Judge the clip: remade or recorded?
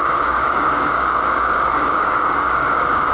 remade